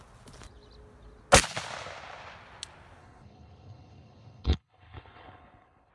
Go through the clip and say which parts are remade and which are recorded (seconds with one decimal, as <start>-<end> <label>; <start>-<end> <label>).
0.0-3.0 recorded; 3.0-5.9 remade